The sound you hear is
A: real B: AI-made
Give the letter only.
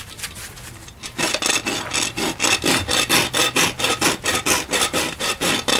A